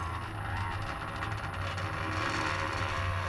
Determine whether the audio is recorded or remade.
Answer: recorded